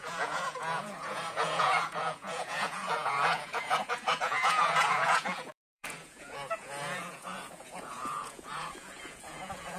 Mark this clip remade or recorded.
remade